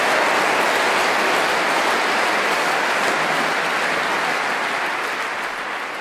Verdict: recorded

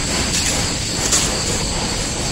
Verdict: recorded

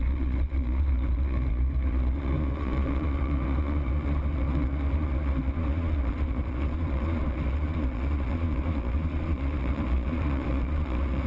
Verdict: remade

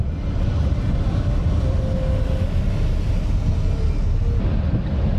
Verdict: recorded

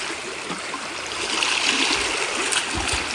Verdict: recorded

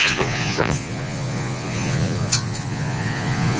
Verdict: remade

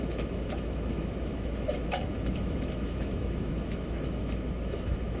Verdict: remade